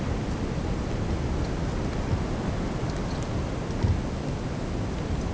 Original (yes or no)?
yes